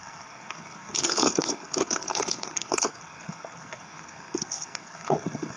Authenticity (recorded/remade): remade